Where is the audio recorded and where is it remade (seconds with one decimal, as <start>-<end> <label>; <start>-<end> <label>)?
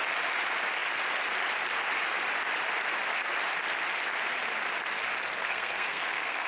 0.0-5.4 recorded; 5.4-6.5 remade